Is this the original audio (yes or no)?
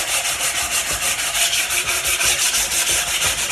yes